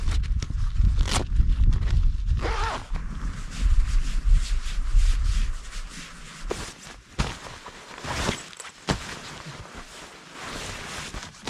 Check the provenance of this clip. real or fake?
real